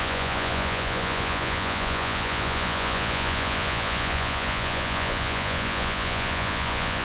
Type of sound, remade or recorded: remade